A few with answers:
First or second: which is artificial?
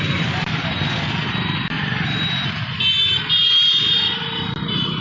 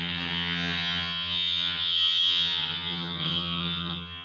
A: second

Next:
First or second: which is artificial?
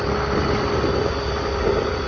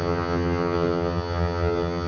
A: second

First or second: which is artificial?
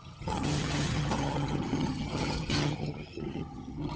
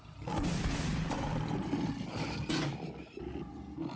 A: first